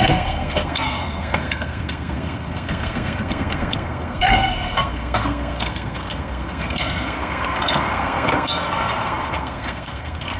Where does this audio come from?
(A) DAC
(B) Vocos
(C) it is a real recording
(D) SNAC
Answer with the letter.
D